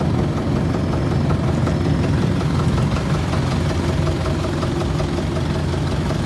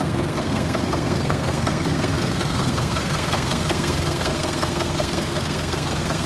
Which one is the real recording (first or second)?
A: first